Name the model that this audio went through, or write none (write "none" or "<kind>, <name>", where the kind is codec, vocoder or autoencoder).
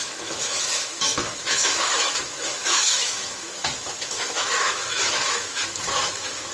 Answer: autoencoder, DAC-VAE